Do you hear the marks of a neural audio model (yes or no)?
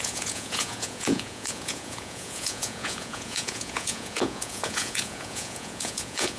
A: yes